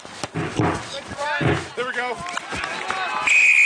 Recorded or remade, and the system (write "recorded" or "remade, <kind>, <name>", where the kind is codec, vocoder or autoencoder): recorded